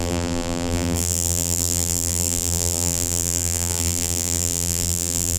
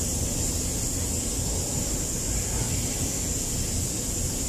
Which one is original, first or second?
second